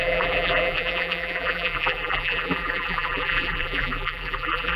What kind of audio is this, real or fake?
fake